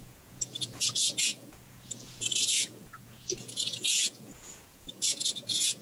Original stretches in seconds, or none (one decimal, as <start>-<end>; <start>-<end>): none